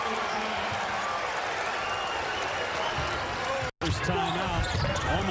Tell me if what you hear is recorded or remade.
recorded